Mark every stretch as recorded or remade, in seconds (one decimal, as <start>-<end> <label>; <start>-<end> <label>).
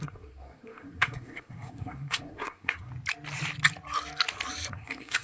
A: 0.0-2.9 remade; 2.9-4.7 recorded; 4.7-5.2 remade